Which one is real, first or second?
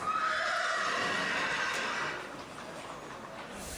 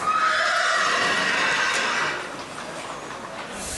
second